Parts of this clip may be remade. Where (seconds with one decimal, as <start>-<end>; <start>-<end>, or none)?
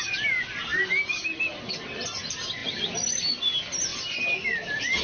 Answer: none